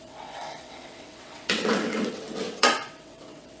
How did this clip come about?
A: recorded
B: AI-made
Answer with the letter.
B